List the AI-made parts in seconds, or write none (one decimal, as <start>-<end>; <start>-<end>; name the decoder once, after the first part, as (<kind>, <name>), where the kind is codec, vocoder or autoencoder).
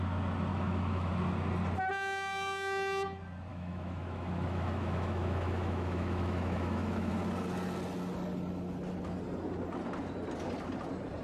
0.5-1.1 (autoencoder, DAC-VAE); 3.5-7.1